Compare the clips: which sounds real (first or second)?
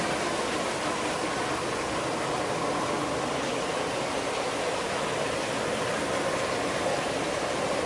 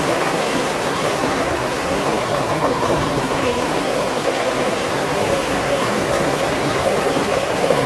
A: first